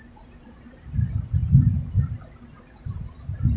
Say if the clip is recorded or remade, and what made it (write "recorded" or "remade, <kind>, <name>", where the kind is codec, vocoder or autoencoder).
remade, vocoder, BigVGAN v2